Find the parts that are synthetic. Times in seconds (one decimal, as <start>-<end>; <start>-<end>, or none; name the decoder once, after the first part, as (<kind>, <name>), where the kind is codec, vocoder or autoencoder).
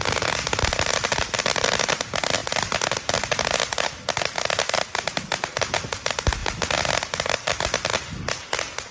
0.4-1.9 (vocoder, BigVGAN v2)